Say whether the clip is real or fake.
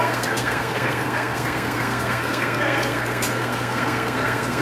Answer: fake